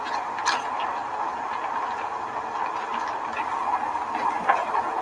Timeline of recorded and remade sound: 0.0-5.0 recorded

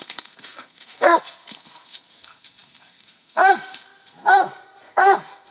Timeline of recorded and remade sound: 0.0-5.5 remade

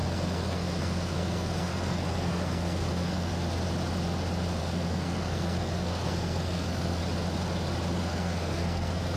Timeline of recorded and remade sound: 0.0-3.3 remade; 3.3-4.6 recorded; 4.6-7.0 remade; 7.0-8.0 recorded; 8.0-9.2 remade

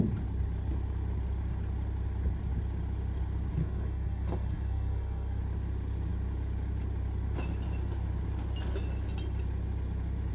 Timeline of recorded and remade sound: 0.0-3.6 recorded; 3.6-5.4 remade; 5.4-10.3 recorded

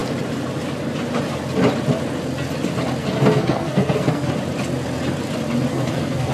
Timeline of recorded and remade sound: 0.0-3.0 recorded; 3.0-4.3 remade; 4.3-5.7 recorded; 5.7-6.3 remade